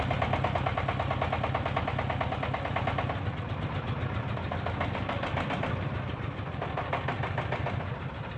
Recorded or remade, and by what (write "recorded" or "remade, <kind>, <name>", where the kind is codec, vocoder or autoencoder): remade, vocoder, BigVGAN v2